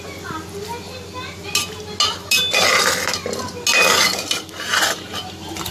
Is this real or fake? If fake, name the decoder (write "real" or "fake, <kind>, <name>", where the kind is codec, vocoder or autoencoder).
real